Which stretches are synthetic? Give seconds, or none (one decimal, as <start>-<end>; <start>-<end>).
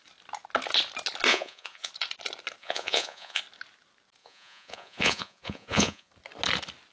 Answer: 1.3-1.9; 2.6-3.4; 4.2-6.1